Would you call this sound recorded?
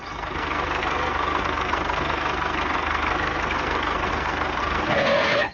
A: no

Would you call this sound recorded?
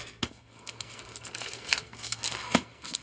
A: no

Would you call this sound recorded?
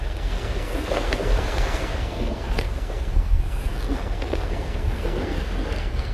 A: no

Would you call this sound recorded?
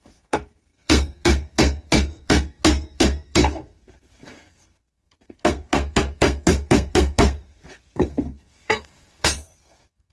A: no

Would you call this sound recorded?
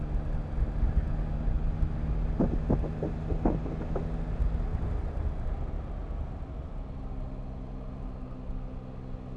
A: yes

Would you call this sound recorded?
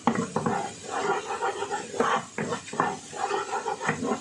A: yes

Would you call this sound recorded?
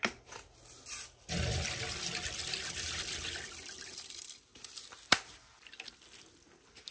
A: yes